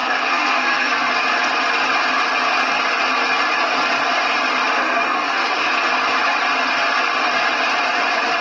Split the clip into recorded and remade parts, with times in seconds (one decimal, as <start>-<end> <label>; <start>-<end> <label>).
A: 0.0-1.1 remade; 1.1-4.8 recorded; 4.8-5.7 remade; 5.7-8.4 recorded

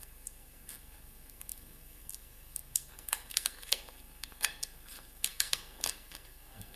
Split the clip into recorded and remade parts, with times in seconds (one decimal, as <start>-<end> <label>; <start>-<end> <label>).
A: 0.0-6.8 remade

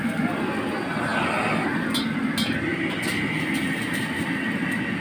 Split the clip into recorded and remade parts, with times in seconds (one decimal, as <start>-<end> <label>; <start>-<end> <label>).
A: 0.0-5.0 recorded

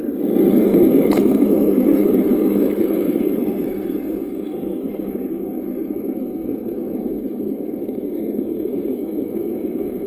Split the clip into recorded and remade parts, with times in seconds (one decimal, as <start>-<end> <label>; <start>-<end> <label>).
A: 0.0-0.5 recorded; 0.5-10.1 remade

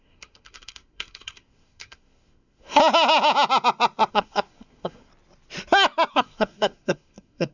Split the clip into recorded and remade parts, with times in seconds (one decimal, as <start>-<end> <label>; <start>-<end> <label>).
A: 0.0-2.8 remade; 2.8-4.1 recorded; 4.1-5.1 remade; 5.1-6.1 recorded; 6.1-7.5 remade